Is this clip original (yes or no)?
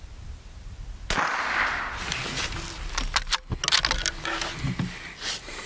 yes